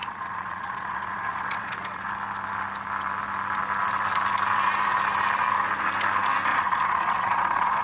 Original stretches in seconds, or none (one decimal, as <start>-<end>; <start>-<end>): 2.1-6.5